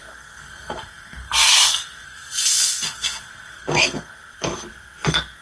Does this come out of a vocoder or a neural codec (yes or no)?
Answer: yes